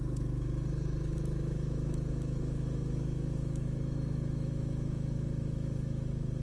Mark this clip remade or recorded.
remade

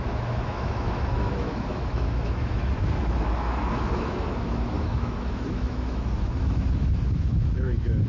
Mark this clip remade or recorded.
remade